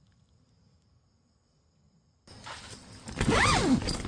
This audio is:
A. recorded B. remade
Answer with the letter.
A